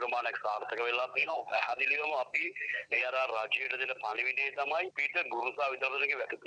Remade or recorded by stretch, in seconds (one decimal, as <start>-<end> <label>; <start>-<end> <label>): 0.0-1.1 recorded; 1.1-1.8 remade; 1.8-2.3 recorded; 2.3-3.0 remade; 3.0-6.5 recorded